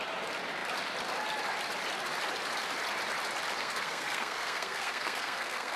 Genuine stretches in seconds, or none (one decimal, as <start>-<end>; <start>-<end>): 0.0-3.6